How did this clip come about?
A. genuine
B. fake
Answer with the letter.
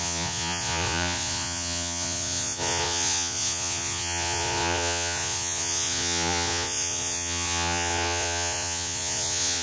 B